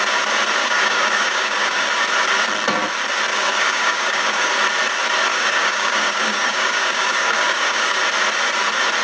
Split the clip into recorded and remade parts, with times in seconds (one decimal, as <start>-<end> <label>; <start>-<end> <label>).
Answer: 0.0-0.6 recorded; 0.6-1.9 remade; 1.9-3.3 recorded; 3.3-4.5 remade; 4.5-5.3 recorded; 5.3-8.0 remade; 8.0-9.0 recorded